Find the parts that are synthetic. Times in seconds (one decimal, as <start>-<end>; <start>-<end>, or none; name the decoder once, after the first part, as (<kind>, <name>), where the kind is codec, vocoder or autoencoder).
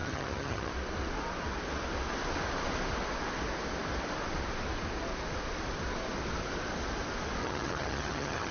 0.0-0.7 (vocoder, HiFi-GAN); 7.4-8.5